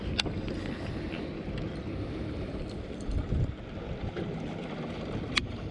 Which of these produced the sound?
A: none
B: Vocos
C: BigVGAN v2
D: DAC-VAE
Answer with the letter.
A